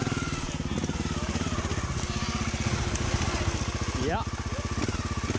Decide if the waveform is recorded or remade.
recorded